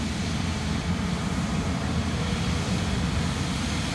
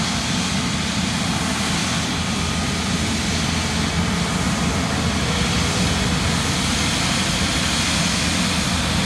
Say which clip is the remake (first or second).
first